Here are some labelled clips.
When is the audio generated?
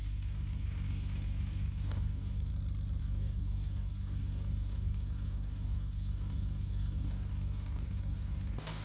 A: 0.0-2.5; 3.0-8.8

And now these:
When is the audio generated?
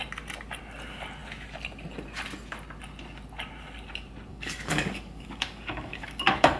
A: 4.3-6.6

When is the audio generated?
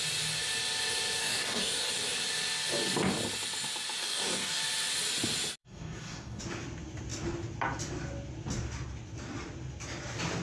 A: 1.2-1.9; 4.0-4.6; 5.6-6.4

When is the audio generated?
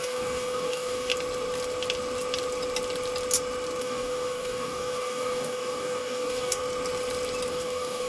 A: 0.0-1.1; 3.8-6.6; 7.5-8.1